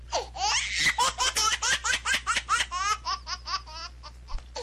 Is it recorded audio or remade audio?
recorded